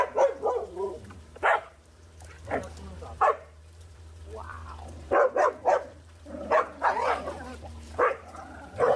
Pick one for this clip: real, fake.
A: fake